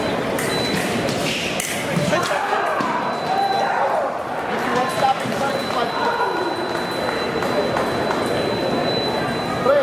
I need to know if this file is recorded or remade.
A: remade